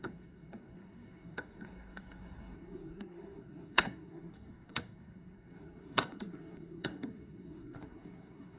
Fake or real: fake